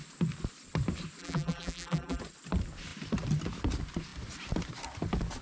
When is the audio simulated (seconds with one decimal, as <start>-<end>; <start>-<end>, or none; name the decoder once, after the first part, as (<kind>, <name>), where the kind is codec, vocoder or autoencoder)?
1.2-2.2 (vocoder, BigVGAN v2)